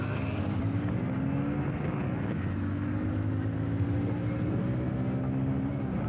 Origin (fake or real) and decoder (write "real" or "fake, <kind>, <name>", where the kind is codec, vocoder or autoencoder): real